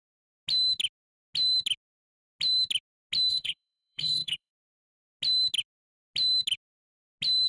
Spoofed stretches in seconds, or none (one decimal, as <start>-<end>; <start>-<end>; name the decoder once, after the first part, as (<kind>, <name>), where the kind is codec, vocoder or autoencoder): 3.3-4.5 (codec, HILCodec)